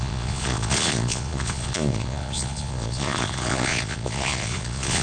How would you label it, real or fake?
fake